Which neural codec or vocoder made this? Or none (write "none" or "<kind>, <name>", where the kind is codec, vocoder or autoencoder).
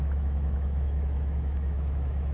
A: autoencoder, DAC-VAE